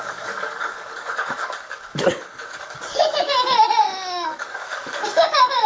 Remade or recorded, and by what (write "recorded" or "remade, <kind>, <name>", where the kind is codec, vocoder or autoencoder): remade, codec, DAC